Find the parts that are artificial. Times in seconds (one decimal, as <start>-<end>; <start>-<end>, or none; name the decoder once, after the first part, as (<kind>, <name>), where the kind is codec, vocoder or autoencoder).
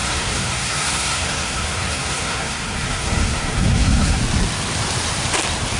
0.0-4.2 (codec, SNAC)